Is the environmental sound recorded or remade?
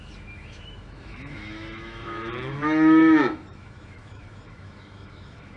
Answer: remade